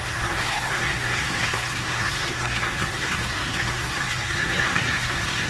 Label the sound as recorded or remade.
remade